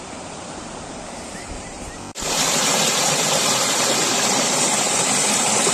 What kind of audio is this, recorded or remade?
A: remade